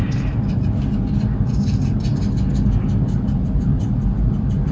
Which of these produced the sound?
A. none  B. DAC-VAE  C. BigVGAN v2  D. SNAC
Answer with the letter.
A